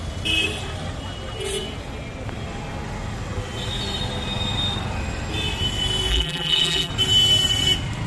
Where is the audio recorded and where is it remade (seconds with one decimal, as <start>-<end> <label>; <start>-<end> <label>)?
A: 0.0-6.1 recorded; 6.1-6.9 remade; 6.9-8.1 recorded